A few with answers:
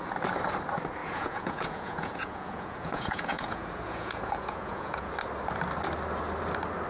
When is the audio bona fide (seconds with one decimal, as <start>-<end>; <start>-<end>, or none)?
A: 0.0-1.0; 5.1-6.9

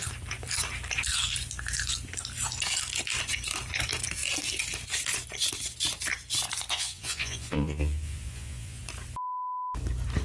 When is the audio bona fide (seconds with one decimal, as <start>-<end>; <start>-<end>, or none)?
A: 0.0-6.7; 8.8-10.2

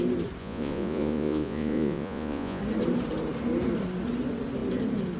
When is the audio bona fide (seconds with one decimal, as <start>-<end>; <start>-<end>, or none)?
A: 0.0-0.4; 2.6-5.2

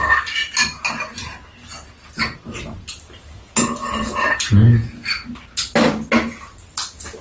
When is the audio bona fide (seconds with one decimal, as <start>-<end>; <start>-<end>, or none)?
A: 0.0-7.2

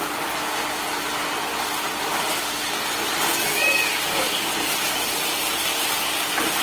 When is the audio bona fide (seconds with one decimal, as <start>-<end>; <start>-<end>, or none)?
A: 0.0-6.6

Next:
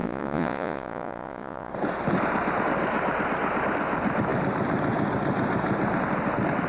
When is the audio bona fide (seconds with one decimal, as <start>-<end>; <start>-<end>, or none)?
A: 1.7-6.7